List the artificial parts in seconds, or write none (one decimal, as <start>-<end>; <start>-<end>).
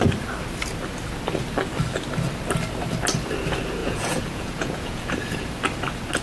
3.8-5.4